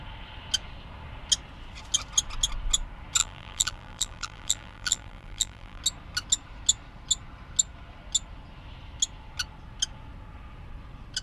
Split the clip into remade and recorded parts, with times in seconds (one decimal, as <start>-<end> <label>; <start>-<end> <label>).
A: 0.0-3.2 recorded; 3.2-5.8 remade; 5.8-11.2 recorded